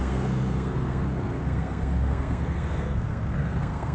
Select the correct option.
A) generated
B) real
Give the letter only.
A